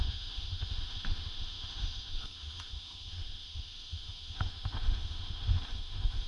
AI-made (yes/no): yes